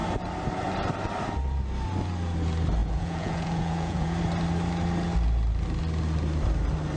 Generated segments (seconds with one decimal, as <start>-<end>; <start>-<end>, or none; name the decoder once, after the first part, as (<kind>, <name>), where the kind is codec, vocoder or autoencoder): 2.8-4.2 (vocoder, Vocos)